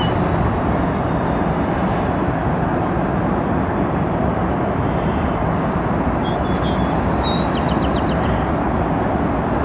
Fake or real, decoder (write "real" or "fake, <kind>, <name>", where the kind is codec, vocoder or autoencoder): real